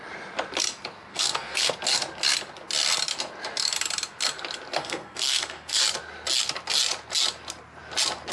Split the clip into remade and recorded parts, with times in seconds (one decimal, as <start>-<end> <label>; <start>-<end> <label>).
0.0-1.1 recorded; 1.1-1.7 remade; 1.7-4.8 recorded; 4.8-5.8 remade; 5.8-8.3 recorded